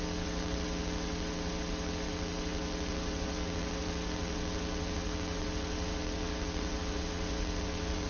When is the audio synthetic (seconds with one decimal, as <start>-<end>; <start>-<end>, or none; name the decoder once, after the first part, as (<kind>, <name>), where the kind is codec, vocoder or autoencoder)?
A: 0.0-8.1 (vocoder, WaveNeXt)